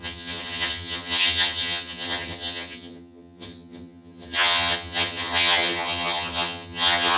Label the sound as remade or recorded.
remade